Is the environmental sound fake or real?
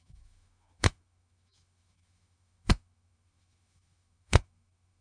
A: fake